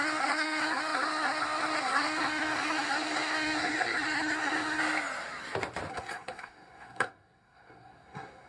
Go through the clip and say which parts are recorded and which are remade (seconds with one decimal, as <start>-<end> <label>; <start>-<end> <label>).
0.0-4.8 remade; 4.8-5.9 recorded; 5.9-8.5 remade